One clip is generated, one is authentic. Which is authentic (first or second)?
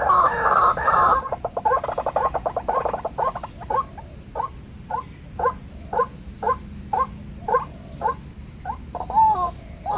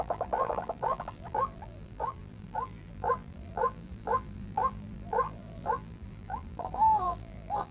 first